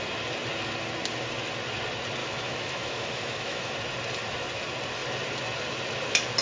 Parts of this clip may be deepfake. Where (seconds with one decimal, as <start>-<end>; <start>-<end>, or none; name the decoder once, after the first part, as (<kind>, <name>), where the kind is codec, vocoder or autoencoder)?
2.2-3.7 (autoencoder, DAC-VAE)